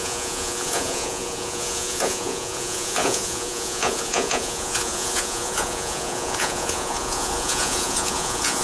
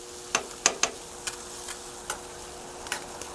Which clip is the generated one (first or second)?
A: first